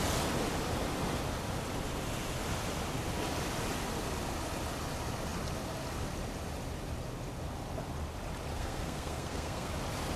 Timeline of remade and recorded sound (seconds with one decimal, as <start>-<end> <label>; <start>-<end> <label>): 0.0-8.5 recorded; 8.5-9.7 remade; 9.7-10.2 recorded